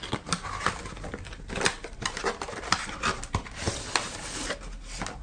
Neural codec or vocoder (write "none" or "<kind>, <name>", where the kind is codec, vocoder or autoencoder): none